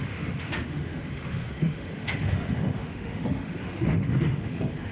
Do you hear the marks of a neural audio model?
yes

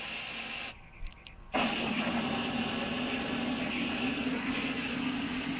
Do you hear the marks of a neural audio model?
no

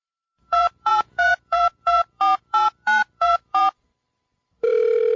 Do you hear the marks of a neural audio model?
yes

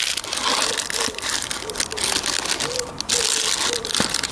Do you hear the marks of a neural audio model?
no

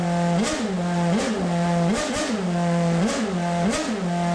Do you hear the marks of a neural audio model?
no